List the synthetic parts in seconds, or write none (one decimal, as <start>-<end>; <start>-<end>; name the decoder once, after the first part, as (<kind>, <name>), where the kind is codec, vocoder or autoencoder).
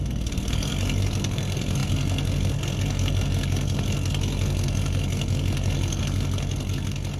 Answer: 0.0-7.2 (codec, SNAC)